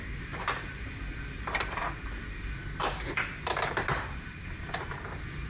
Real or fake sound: fake